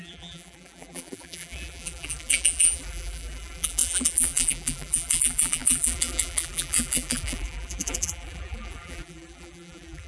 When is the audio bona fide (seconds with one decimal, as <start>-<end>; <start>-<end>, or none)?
none